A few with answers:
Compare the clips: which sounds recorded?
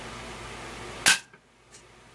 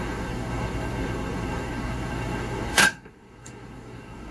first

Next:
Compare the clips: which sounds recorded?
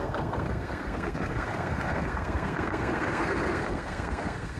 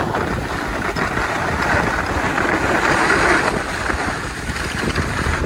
second